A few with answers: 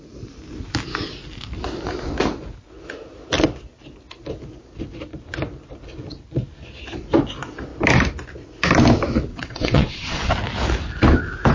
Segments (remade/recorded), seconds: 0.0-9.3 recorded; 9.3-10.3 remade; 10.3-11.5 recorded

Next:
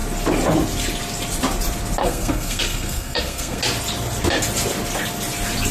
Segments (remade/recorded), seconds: 0.0-2.0 recorded; 2.0-3.6 remade; 3.6-5.7 recorded

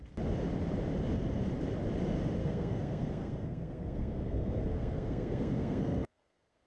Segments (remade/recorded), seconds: 0.0-2.4 recorded; 2.4-6.7 remade